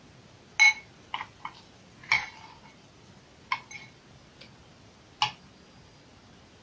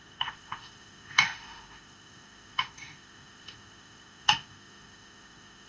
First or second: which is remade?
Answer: second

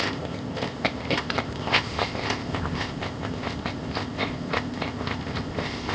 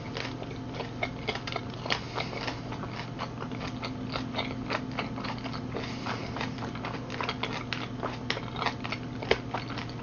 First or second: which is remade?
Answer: first